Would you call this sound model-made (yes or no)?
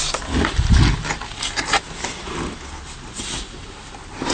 no